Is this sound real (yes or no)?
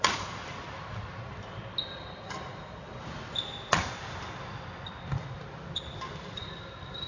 yes